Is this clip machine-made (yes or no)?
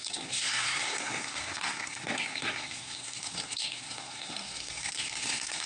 yes